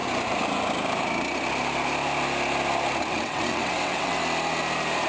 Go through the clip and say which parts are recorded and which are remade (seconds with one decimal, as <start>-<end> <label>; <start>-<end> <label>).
0.0-3.1 recorded; 3.1-4.2 remade; 4.2-5.1 recorded